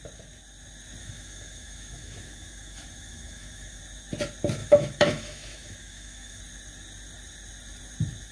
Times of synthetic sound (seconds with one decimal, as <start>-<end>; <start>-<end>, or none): 1.0-3.8; 4.6-6.4